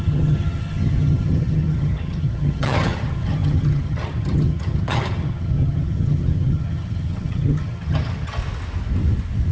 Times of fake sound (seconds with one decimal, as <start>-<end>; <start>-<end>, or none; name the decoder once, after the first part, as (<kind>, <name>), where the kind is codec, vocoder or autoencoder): 0.0-8.4 (vocoder, HiFi-GAN)